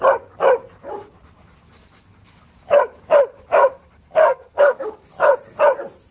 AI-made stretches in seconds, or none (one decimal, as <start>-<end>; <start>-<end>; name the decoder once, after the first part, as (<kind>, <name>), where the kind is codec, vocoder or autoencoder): 4.2-4.8 (codec, SNAC)